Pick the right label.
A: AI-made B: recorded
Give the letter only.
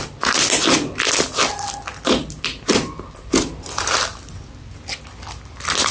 B